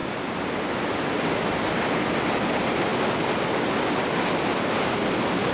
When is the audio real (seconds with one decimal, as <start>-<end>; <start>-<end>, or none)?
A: 0.0-5.5